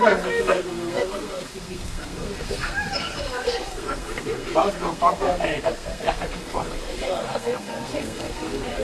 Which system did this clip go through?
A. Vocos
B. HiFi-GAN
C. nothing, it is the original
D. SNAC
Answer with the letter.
D